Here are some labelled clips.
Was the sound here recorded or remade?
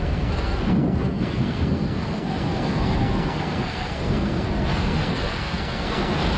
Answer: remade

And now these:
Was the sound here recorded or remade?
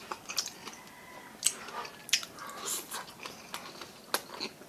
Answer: recorded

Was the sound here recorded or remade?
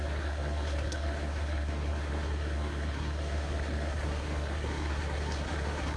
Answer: remade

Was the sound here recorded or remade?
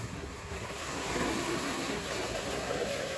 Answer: remade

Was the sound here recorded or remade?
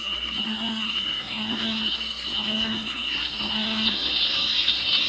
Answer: remade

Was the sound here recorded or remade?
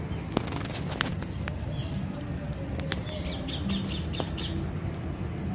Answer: recorded